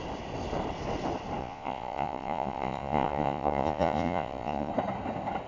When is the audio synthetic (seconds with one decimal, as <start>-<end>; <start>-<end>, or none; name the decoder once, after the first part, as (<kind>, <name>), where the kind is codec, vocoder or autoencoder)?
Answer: 1.4-4.7 (vocoder, Vocos)